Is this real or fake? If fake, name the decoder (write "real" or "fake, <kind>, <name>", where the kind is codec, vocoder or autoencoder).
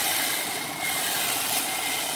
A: real